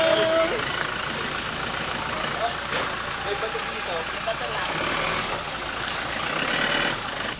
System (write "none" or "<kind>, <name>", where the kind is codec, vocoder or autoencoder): none